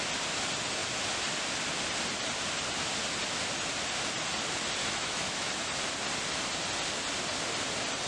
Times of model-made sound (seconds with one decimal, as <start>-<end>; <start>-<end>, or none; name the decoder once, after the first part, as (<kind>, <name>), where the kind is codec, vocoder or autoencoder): 4.8-5.5 (autoencoder, DAC-VAE)